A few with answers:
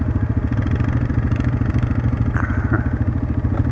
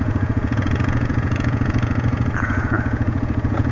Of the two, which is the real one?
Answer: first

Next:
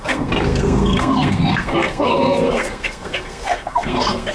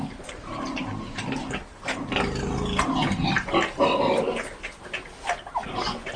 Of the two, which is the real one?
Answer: second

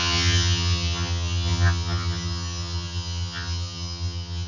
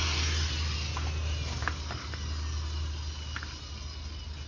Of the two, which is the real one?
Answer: second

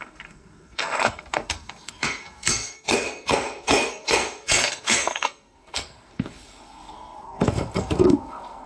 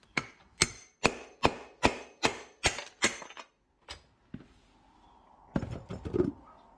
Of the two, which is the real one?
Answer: second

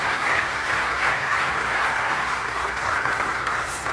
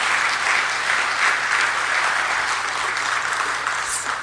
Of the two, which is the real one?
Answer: second